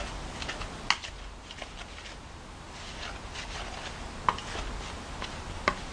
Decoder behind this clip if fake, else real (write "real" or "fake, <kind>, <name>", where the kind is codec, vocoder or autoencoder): real